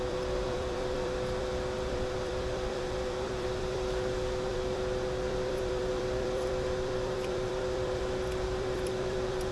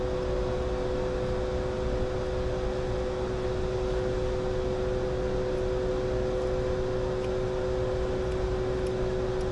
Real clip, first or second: second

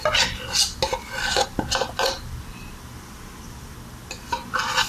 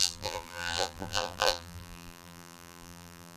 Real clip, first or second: first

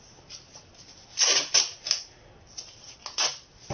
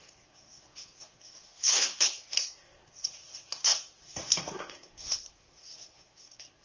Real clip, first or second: first